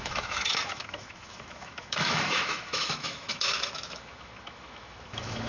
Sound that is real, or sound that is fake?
fake